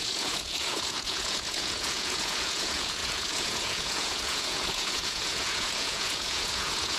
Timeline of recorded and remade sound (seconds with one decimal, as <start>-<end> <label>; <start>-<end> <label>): 0.0-7.0 remade

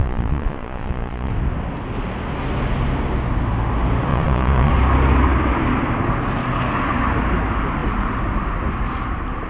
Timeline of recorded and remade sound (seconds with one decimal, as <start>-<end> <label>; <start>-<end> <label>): 0.0-1.3 remade; 1.3-4.1 recorded; 4.1-4.7 remade; 4.7-9.5 recorded

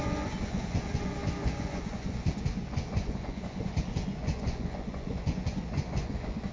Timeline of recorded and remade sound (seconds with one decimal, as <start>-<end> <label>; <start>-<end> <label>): 0.0-6.5 remade